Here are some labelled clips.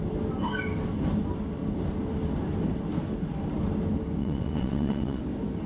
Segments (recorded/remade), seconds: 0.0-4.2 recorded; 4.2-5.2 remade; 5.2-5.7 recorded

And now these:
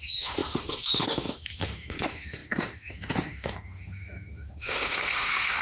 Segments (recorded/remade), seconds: 0.0-5.6 remade

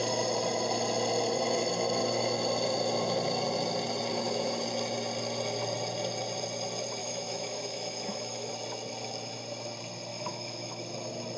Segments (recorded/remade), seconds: 0.0-4.1 recorded; 4.1-4.6 remade; 4.6-7.0 recorded; 7.0-8.5 remade; 8.5-10.1 recorded; 10.1-10.8 remade; 10.8-11.4 recorded

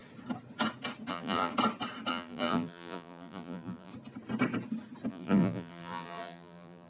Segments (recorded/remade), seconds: 0.0-1.1 recorded; 1.1-1.5 remade; 1.5-2.1 recorded; 2.1-3.9 remade; 3.9-5.1 recorded; 5.1-6.9 remade

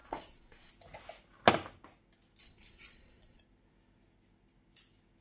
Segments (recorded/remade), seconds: 0.0-0.7 remade; 0.7-2.4 recorded; 2.4-3.4 remade; 3.4-5.2 recorded